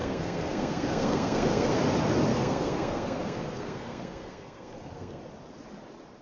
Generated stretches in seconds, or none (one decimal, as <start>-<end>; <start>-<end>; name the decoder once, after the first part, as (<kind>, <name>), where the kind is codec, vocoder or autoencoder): 0.0-1.8 (codec, SNAC); 2.3-5.2